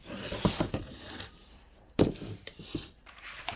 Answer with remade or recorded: remade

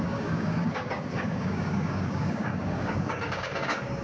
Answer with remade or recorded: remade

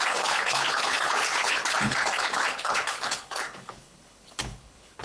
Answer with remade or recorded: remade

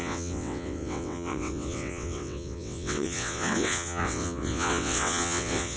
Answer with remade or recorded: remade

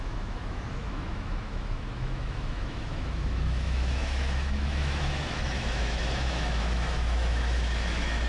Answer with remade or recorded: remade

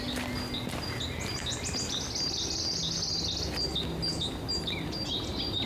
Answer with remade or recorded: recorded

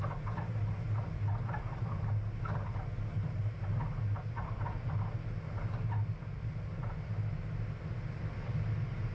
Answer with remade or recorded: recorded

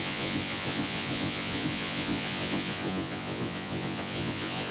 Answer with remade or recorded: remade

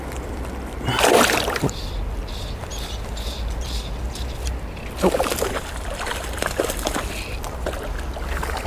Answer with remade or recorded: recorded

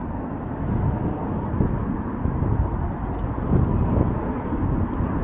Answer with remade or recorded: recorded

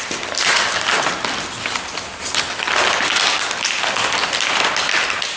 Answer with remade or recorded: recorded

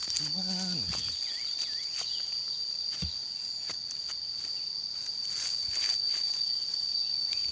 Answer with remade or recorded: recorded